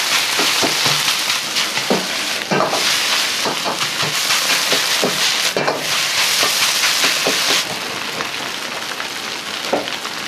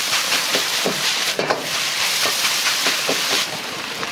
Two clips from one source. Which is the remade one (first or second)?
second